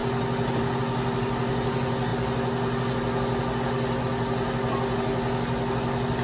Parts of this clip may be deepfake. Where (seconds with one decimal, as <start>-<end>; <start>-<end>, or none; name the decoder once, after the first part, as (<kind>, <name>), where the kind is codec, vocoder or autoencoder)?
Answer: none